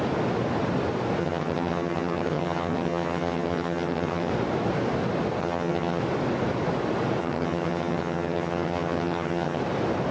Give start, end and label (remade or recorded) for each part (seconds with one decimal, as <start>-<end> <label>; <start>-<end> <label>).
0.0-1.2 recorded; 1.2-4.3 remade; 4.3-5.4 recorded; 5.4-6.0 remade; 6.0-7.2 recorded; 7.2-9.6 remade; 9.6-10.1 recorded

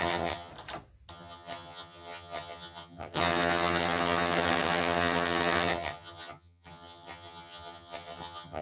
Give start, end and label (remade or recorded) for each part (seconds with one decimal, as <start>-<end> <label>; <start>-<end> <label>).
0.0-0.5 remade; 0.5-1.1 recorded; 1.1-8.6 remade

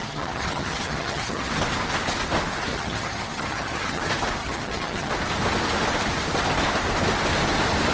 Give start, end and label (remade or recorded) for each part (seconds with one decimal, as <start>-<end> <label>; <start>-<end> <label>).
0.0-1.5 remade; 1.5-2.7 recorded; 2.7-4.0 remade; 4.0-4.4 recorded; 4.4-5.1 remade; 5.1-7.9 recorded